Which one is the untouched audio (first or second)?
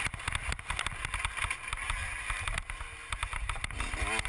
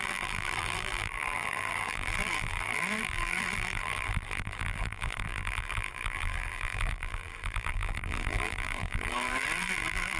first